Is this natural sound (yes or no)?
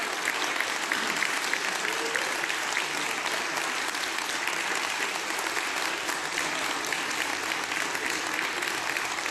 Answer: yes